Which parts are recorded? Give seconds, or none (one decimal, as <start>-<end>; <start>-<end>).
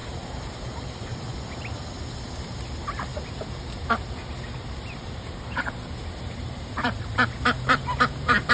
1.1-2.5